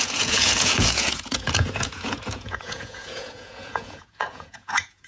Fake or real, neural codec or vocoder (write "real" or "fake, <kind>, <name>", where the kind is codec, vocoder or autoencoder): fake, vocoder, Vocos